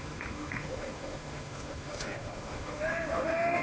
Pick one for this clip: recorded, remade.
remade